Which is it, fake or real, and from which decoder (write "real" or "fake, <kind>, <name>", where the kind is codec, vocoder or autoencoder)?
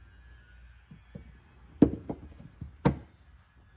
real